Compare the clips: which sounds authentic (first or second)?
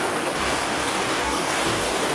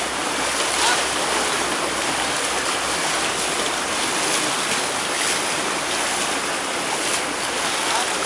second